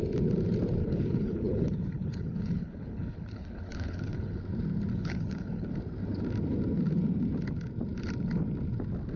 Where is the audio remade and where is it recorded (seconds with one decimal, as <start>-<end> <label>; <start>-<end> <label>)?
0.0-0.8 recorded; 0.8-4.4 remade; 4.4-4.9 recorded; 4.9-5.7 remade; 5.7-9.2 recorded